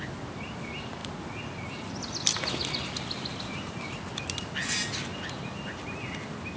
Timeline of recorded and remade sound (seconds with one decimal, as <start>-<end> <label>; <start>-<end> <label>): 0.0-6.6 recorded